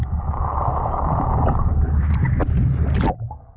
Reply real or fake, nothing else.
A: real